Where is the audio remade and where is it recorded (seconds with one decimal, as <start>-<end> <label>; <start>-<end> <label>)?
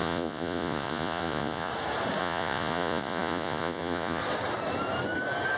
0.0-1.7 remade; 1.7-2.2 recorded; 2.2-4.2 remade; 4.2-5.6 recorded